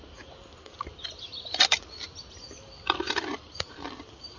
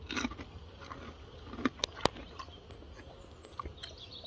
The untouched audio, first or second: second